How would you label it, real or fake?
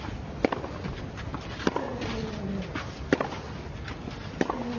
real